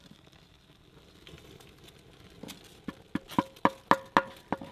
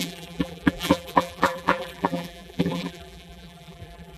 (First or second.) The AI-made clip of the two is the second